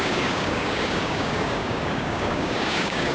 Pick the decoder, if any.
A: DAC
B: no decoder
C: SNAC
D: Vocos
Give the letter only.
A